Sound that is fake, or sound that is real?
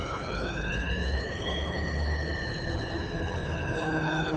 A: fake